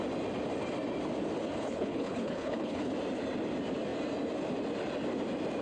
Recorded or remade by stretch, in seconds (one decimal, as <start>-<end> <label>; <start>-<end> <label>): 0.0-1.6 recorded; 1.6-2.9 remade; 2.9-5.6 recorded